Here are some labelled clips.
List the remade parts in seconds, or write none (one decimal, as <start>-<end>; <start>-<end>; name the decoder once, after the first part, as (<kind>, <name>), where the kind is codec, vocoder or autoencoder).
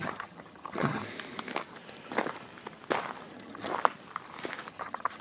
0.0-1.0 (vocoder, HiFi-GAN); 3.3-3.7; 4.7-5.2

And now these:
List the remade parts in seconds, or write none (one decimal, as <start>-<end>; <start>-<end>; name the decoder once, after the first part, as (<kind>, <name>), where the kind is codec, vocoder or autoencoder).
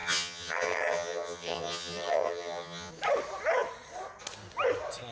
0.0-2.9 (vocoder, HiFi-GAN)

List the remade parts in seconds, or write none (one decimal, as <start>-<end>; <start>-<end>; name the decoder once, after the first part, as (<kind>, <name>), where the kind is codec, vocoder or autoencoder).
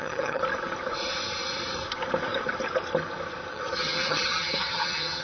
0.0-0.4 (vocoder, HiFi-GAN); 3.5-5.2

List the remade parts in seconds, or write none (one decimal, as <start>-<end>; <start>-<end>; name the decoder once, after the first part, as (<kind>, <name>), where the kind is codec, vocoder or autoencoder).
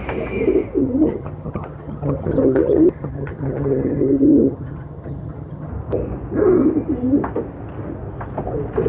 0.8-5.7 (vocoder, HiFi-GAN)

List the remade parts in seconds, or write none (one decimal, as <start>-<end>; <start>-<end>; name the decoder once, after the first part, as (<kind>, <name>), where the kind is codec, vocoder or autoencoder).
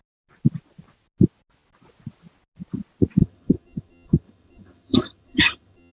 3.2-5.9 (vocoder, HiFi-GAN)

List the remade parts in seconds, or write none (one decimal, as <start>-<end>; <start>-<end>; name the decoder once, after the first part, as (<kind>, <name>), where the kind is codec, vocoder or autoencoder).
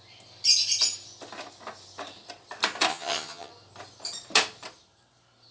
2.9-3.5 (vocoder, HiFi-GAN)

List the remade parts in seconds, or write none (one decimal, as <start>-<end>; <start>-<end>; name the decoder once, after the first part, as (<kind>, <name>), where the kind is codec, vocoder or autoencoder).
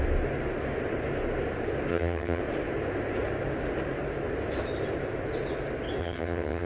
1.9-2.4 (vocoder, HiFi-GAN); 6.0-6.7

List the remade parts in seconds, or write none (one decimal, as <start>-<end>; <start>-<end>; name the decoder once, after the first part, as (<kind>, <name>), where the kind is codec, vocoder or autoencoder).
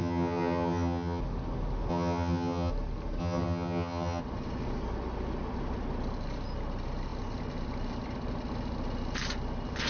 0.0-1.2 (vocoder, HiFi-GAN); 1.9-2.7; 3.2-4.2